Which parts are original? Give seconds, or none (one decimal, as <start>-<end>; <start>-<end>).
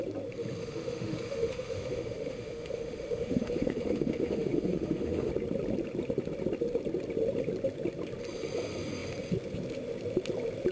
0.0-0.6; 5.3-10.7